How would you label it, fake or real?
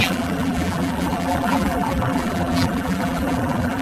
fake